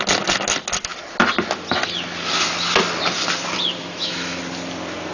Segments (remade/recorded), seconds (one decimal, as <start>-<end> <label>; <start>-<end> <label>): 0.0-3.8 recorded; 3.8-4.4 remade; 4.4-5.1 recorded

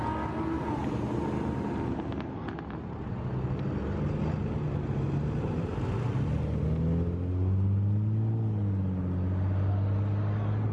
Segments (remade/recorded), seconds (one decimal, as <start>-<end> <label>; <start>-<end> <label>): 0.0-10.7 recorded